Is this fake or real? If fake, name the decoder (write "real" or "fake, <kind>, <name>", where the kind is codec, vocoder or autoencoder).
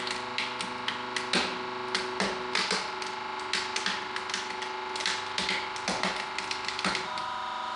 real